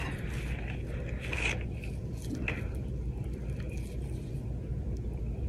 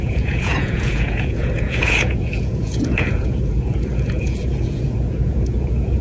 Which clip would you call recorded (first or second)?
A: first